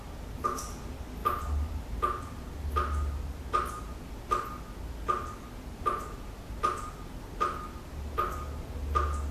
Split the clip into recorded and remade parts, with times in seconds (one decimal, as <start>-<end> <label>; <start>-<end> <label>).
0.0-9.3 recorded